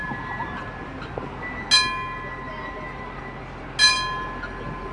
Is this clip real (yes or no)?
yes